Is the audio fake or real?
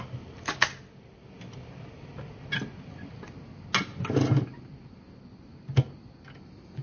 real